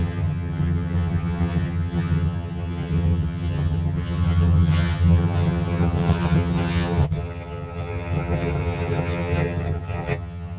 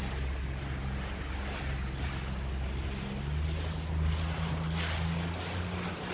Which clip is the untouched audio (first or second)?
second